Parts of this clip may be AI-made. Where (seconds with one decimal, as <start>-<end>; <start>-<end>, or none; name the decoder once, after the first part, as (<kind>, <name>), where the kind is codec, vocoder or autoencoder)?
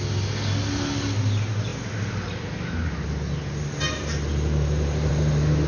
none